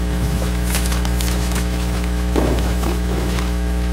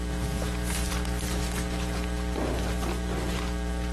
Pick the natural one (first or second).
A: second